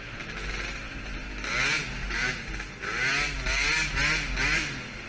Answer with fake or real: real